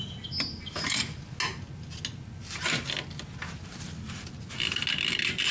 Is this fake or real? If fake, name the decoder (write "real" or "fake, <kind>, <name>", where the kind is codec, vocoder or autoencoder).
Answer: real